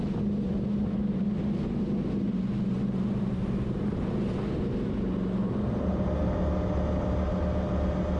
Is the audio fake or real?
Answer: real